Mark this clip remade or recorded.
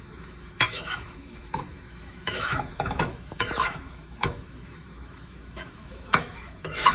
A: remade